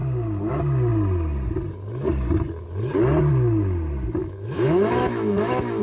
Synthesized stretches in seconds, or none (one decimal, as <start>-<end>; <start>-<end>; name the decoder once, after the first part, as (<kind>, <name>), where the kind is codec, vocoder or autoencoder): 4.2-5.8 (autoencoder, DAC-VAE)